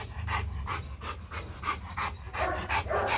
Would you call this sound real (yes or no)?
yes